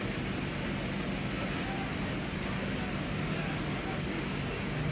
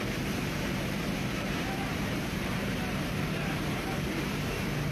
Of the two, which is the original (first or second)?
first